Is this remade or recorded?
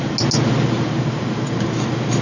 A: recorded